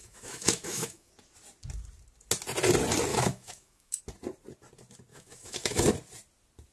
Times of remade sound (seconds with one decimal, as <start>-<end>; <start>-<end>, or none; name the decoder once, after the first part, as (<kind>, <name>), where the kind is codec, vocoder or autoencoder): 0.0-1.1 (autoencoder, DAC-VAE); 3.1-4.0; 5.1-5.9